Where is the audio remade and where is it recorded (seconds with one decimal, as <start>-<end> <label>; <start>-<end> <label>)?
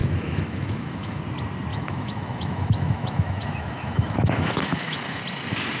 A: 0.0-1.2 remade; 1.2-1.7 recorded; 1.7-5.2 remade; 5.2-5.8 recorded